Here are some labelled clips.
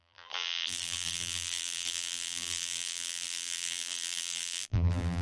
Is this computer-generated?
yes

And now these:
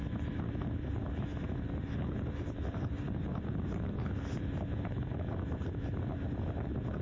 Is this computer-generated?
yes